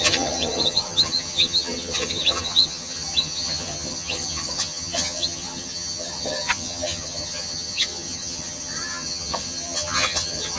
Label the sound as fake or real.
fake